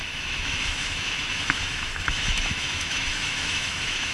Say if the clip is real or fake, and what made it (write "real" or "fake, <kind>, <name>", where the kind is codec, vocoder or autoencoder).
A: fake, autoencoder, DAC-VAE